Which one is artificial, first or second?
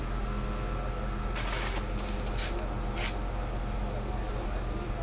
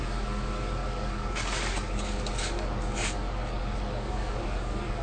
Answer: second